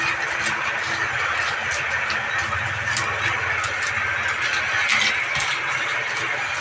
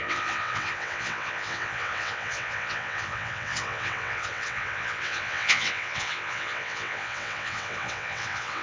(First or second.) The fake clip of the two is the second